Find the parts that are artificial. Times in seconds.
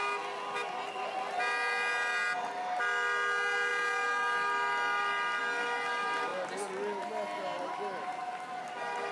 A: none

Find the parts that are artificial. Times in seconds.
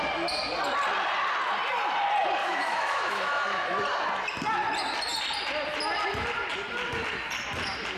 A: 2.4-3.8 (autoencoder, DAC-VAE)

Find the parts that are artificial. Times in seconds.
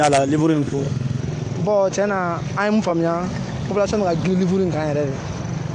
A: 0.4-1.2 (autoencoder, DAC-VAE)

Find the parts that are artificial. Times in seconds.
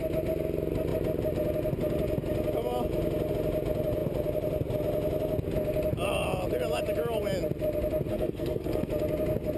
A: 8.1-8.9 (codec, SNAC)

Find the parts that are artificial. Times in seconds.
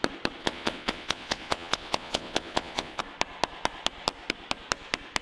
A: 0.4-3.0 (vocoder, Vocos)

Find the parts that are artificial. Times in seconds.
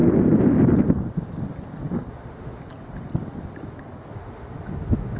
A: 2.1-2.6 (autoencoder, DAC-VAE); 4.1-5.2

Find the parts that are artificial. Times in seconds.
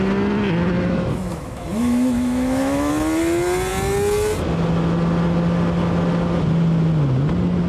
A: 1.3-2.9 (autoencoder, DAC-VAE)